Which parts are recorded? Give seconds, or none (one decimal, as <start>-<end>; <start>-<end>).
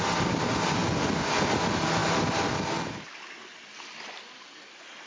0.0-5.1